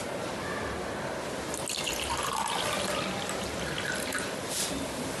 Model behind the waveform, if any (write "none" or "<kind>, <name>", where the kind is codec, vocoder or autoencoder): none